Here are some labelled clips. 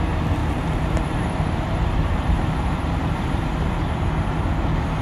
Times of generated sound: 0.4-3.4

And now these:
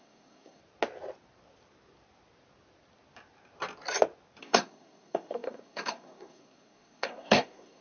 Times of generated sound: 0.0-0.6; 4.4-7.8

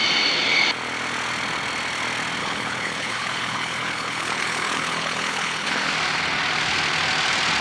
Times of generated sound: 2.4-5.9